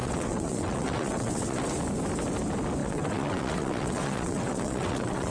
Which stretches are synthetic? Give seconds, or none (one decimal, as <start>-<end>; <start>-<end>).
0.0-1.6; 2.8-5.3

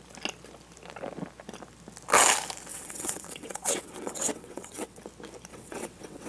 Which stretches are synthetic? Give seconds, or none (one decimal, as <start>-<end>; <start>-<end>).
2.7-5.0; 5.5-6.3

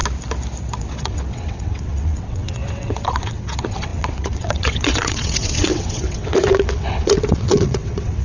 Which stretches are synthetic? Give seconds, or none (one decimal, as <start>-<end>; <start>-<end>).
0.8-8.2

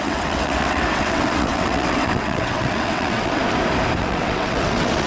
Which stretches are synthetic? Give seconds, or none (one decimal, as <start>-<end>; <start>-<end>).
0.0-3.4; 4.0-5.1